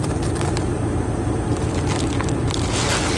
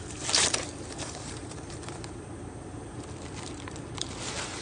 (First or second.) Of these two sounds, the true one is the first